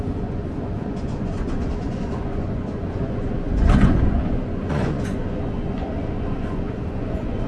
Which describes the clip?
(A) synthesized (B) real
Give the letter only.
A